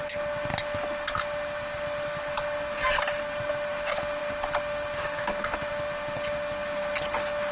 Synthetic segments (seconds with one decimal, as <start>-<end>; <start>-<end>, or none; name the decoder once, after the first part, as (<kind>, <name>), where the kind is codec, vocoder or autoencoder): none